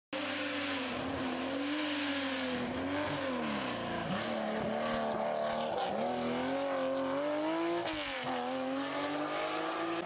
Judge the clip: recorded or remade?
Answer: recorded